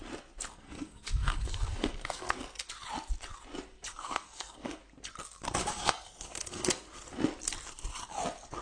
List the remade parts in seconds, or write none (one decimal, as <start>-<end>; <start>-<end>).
0.5-2.7; 3.9-4.8; 5.6-6.7